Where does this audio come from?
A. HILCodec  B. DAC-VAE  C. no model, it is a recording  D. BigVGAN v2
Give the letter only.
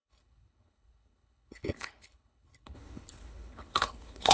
A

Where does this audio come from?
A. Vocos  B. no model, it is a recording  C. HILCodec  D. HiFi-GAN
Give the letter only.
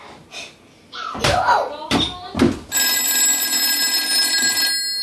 B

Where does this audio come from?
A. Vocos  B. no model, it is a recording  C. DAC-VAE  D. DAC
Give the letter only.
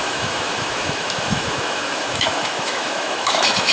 C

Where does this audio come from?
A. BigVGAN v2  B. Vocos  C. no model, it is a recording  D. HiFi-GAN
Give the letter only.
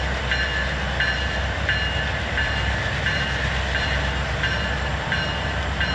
A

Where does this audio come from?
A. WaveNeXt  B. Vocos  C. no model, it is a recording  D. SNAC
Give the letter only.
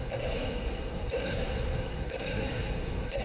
D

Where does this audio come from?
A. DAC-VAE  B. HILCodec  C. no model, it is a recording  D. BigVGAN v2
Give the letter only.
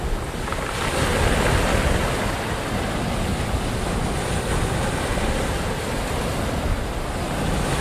C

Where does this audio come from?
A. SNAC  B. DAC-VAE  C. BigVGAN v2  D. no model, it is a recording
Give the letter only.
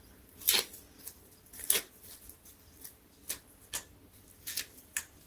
D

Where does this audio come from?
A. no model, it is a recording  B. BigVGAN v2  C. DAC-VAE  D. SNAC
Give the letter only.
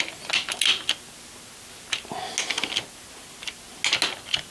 A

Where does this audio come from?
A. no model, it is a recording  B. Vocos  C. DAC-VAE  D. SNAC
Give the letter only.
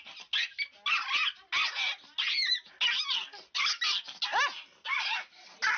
A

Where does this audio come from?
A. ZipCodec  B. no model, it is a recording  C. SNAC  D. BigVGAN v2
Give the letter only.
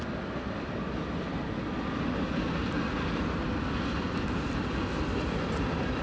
B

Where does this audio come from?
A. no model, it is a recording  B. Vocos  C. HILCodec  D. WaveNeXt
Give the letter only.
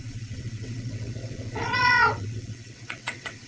D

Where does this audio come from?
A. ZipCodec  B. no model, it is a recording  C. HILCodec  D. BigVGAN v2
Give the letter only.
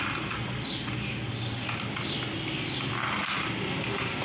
B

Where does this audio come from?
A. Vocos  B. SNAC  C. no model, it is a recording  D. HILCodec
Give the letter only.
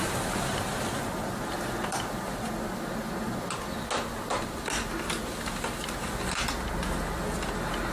C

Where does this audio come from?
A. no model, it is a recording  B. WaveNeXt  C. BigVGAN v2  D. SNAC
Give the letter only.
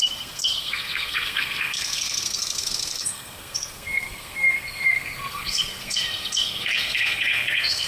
D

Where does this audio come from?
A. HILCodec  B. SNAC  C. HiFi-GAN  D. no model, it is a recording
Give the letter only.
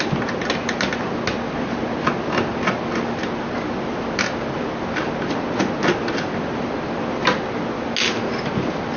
D